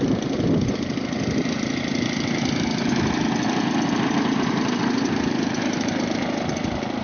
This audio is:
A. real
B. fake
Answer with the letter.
A